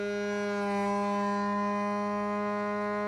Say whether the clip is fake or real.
real